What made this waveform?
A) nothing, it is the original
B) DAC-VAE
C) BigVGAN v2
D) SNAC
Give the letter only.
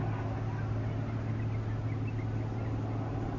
A